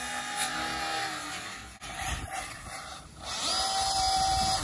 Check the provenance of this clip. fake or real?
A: real